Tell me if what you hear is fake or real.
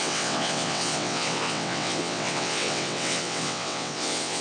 fake